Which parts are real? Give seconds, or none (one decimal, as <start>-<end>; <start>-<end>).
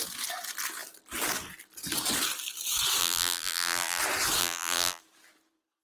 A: 0.0-3.0; 4.0-4.4; 5.0-5.8